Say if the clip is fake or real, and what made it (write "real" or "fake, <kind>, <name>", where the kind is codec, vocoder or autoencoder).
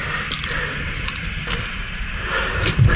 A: real